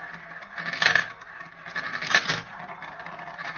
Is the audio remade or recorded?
recorded